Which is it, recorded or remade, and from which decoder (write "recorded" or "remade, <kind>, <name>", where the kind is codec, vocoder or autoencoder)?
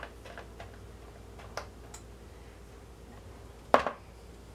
recorded